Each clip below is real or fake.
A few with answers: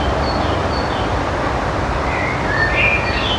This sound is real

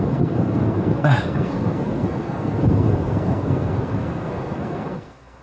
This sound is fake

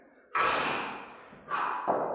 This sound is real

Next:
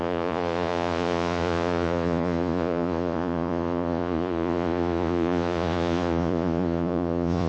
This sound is fake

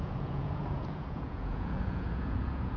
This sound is fake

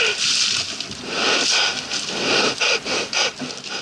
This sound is real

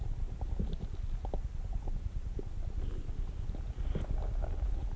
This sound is real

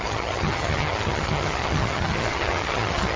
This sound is fake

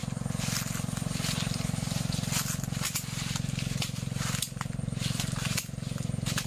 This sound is real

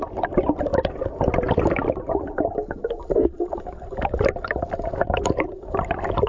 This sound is real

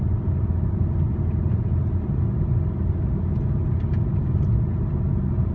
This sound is real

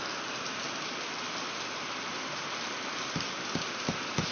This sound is real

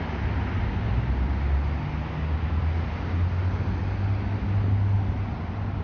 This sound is real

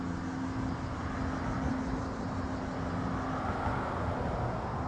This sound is real